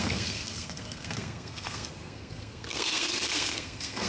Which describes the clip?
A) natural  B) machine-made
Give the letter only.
B